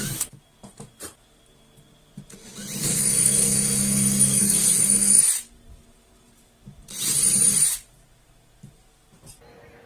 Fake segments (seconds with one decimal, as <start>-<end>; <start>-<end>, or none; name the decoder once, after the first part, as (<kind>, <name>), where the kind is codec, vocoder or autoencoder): 2.8-5.2 (codec, SNAC)